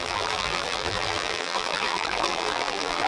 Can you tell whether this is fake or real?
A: fake